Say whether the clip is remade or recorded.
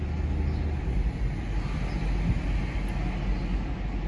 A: recorded